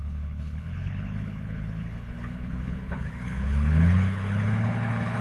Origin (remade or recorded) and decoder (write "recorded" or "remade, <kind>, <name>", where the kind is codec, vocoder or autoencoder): remade, codec, HILCodec